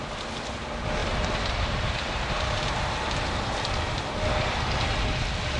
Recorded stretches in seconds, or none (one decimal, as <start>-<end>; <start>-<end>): 0.0-1.0; 2.7-5.6